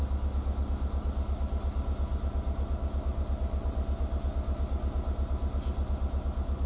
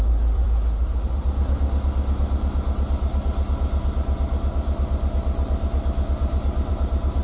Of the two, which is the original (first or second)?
first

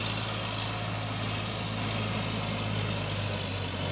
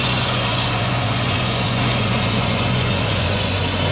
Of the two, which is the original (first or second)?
first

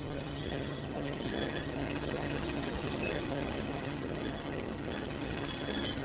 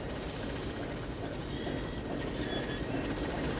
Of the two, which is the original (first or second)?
second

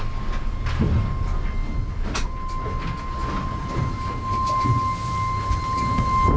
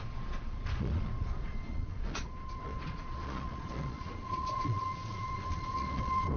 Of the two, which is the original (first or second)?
first